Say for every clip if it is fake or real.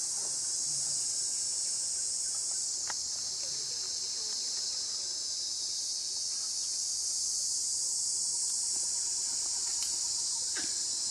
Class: real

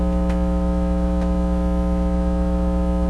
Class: fake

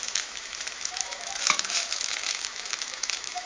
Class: fake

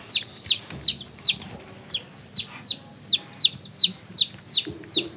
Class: real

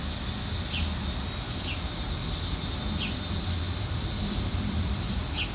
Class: real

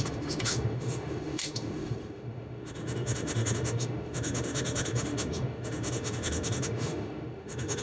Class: fake